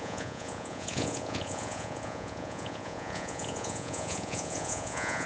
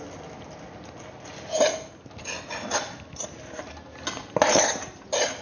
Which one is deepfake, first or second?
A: first